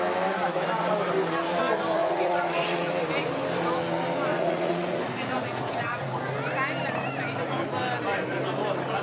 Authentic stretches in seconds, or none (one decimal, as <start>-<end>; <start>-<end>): 0.0-2.0; 2.9-4.3; 6.2-9.0